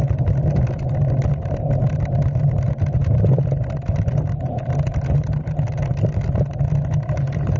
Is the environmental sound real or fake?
real